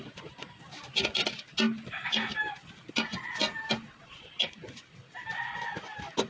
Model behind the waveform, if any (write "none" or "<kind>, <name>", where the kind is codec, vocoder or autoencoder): none